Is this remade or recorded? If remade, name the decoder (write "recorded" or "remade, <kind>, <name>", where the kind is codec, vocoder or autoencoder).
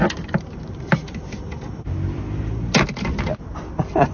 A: recorded